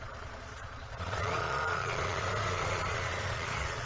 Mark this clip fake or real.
fake